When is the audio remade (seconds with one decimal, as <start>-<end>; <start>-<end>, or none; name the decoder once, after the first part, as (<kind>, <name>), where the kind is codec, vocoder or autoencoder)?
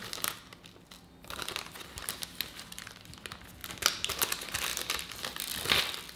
none